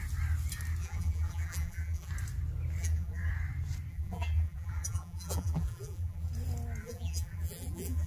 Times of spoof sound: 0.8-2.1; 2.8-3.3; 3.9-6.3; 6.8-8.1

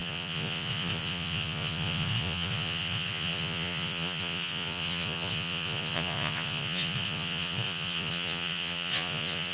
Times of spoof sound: 0.0-9.5

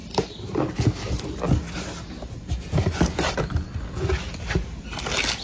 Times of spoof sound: none

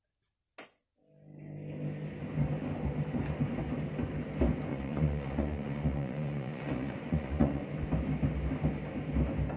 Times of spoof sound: 4.7-7.6

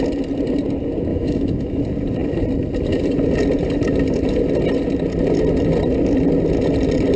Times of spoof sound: 1.1-1.8